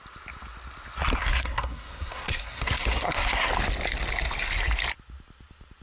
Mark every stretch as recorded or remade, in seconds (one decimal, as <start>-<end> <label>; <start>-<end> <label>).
0.0-1.2 recorded; 1.2-3.5 remade; 3.5-5.8 recorded